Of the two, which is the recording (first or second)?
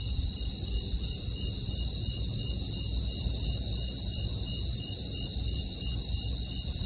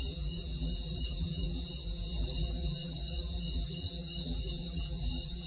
first